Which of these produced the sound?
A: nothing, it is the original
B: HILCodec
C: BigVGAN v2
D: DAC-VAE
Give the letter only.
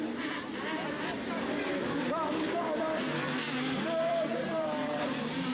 C